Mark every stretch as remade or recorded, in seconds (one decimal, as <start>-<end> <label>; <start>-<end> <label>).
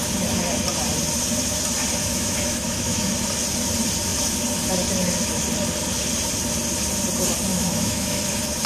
0.0-2.0 recorded; 2.0-3.1 remade; 3.1-7.5 recorded; 7.5-8.2 remade; 8.2-8.7 recorded